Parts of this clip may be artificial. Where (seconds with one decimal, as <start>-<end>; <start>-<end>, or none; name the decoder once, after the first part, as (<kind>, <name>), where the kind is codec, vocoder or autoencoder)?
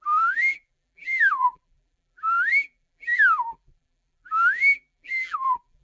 0.0-5.8 (vocoder, BigVGAN v2)